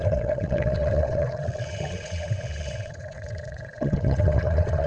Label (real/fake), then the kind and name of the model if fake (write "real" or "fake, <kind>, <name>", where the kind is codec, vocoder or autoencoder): fake, vocoder, WaveNeXt